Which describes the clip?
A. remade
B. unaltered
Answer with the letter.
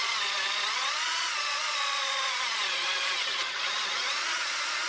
A